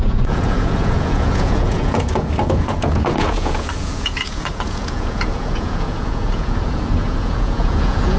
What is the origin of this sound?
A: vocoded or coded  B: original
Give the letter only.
A